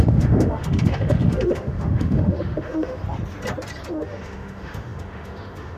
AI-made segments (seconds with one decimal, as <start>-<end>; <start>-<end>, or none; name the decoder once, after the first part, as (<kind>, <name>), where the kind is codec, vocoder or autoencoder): 0.0-3.0 (autoencoder, DAC-VAE); 3.9-5.8